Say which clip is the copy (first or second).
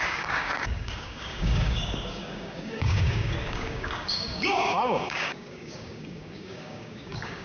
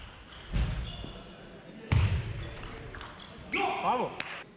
first